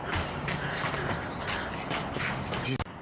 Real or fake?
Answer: real